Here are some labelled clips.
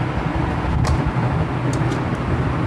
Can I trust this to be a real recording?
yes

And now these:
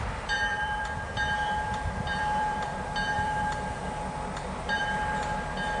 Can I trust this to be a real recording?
no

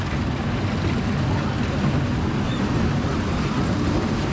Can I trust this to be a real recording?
yes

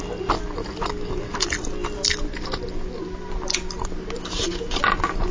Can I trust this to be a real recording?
yes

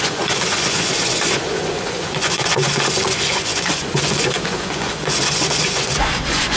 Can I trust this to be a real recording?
no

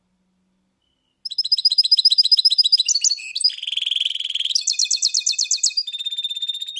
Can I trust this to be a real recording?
yes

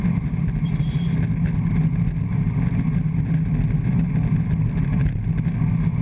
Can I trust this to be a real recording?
yes